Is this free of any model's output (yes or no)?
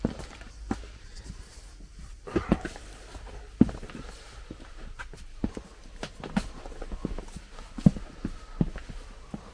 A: yes